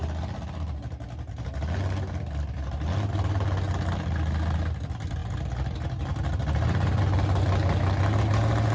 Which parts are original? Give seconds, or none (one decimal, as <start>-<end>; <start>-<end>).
0.0-8.7